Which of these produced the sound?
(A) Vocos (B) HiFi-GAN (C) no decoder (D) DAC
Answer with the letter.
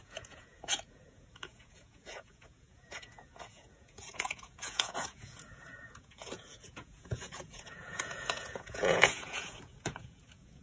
A